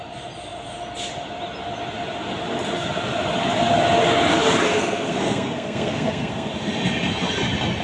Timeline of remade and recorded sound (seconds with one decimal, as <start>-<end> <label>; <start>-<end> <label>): 0.0-4.7 recorded; 4.7-6.5 remade; 6.5-7.8 recorded